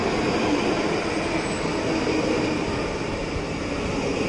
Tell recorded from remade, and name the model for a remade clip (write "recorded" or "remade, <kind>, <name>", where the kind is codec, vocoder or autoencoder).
recorded